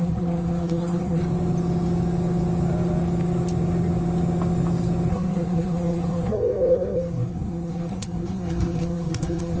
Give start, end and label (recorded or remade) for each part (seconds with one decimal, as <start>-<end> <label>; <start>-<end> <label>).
0.0-1.2 remade; 1.2-5.1 recorded; 5.1-9.6 remade